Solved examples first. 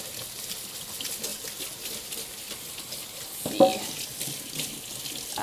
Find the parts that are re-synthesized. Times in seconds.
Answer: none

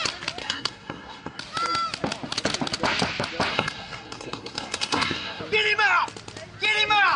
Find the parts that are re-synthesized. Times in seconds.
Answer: 0.4-1.4; 3.5-5.4

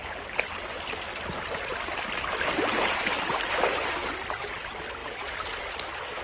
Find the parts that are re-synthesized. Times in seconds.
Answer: none